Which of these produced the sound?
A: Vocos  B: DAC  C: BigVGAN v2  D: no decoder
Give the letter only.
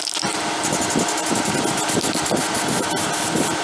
D